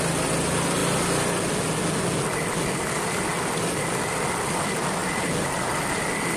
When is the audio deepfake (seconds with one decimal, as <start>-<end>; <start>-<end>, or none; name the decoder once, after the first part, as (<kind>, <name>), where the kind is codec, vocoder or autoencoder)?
none